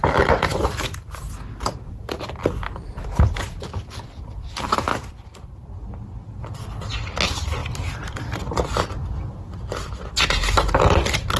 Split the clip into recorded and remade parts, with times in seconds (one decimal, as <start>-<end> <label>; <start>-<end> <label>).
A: 0.0-11.4 remade